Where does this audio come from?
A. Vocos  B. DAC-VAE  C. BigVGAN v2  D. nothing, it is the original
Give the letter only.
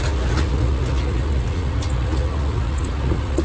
A